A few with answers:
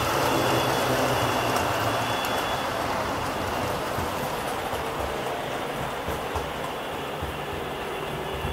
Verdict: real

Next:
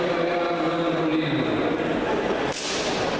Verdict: real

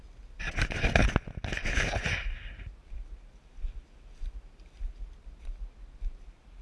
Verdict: real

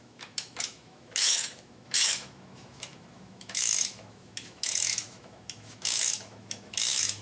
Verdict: fake